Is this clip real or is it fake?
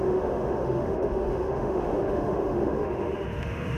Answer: fake